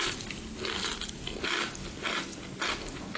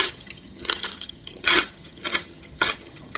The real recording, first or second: first